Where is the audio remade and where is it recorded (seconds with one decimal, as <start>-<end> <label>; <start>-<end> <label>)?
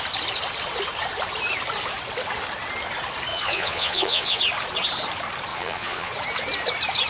0.0-3.3 recorded; 3.3-4.4 remade; 4.4-5.5 recorded; 5.5-6.1 remade; 6.1-7.1 recorded